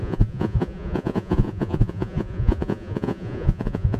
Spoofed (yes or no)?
yes